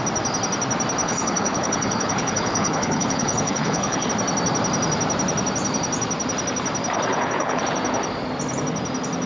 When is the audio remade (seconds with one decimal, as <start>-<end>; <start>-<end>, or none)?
1.0-4.1; 7.1-7.6

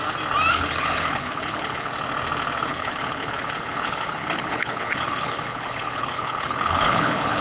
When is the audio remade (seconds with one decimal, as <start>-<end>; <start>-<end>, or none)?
0.5-1.9; 2.7-7.4

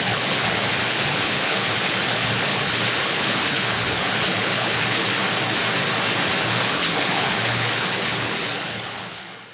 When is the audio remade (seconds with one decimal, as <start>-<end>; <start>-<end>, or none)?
0.0-5.2; 6.4-9.5

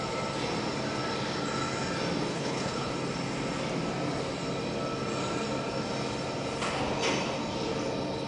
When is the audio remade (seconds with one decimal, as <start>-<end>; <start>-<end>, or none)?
2.3-2.9

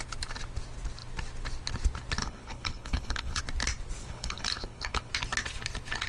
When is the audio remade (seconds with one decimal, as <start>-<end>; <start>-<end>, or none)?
2.2-3.4; 4.0-5.1

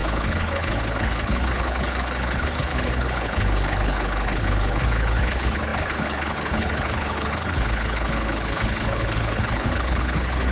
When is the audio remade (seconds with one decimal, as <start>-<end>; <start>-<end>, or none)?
0.0-10.5

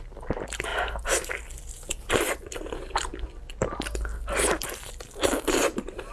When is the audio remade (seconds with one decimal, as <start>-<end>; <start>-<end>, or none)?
none